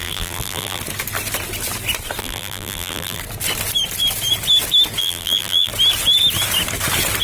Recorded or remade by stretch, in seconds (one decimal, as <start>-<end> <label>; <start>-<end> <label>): 0.0-0.8 remade; 0.8-2.2 recorded; 2.2-3.2 remade; 3.2-5.0 recorded; 5.0-5.7 remade; 5.7-7.2 recorded